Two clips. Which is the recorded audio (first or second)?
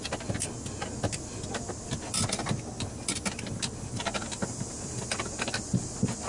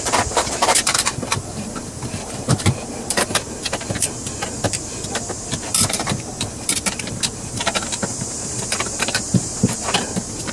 first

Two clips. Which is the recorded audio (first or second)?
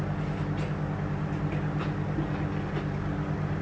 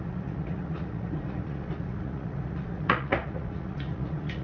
first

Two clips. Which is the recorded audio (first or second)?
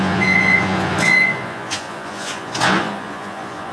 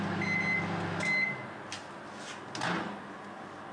second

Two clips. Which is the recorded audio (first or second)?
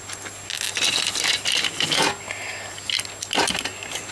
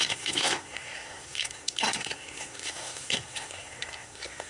first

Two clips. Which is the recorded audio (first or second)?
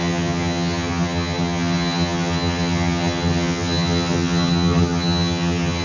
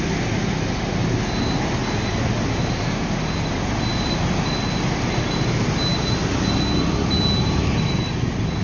second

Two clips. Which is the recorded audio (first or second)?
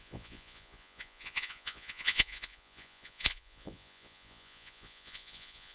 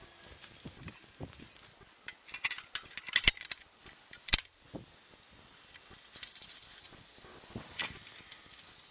second